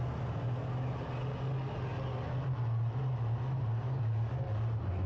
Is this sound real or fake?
real